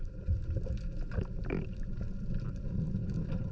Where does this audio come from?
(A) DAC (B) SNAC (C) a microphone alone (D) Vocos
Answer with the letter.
C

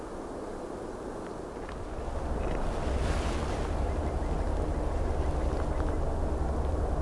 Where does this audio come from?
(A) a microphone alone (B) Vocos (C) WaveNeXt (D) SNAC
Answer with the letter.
A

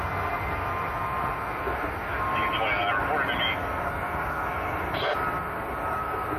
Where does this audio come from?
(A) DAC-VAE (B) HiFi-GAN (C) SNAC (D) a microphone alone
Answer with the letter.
D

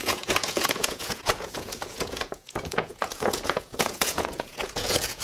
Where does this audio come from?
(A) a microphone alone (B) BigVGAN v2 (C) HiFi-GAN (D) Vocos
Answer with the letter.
D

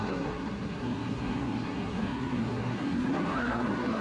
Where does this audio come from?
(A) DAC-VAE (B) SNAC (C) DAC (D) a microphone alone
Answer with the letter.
B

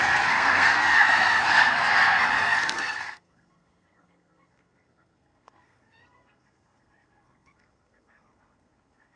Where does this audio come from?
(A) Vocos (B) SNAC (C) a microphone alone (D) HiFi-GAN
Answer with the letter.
B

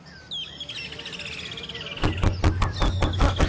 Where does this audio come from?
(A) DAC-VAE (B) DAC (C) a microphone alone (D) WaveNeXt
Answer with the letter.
C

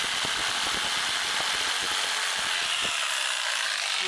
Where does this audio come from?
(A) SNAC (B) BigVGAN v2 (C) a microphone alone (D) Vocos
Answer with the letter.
C